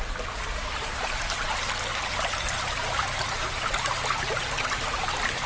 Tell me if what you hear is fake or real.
real